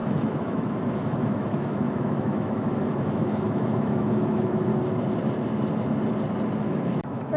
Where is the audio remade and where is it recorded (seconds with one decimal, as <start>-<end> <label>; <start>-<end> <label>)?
0.0-4.7 remade; 4.7-6.6 recorded; 6.6-7.4 remade